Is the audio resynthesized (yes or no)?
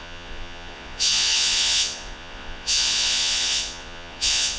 yes